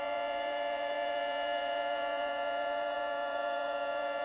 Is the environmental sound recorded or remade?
remade